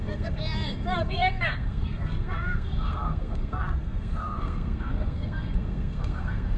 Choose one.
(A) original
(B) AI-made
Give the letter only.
B